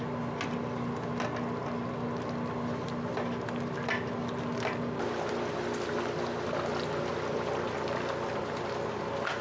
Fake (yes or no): no